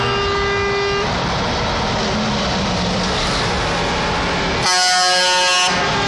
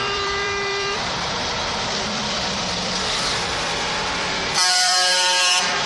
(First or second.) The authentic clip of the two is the first